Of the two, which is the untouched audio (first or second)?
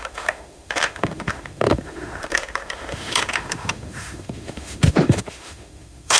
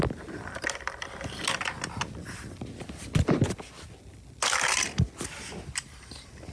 second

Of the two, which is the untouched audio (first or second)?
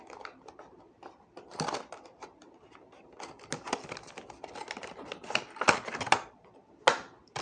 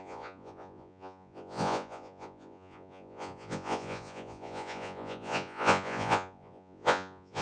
first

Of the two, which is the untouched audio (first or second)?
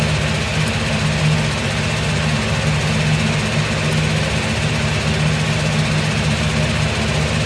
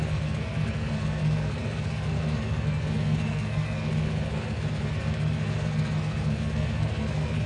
first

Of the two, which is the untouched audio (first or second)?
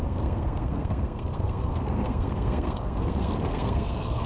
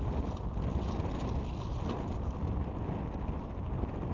second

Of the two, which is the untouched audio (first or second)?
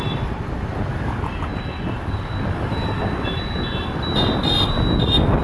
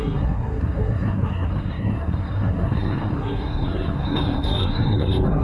first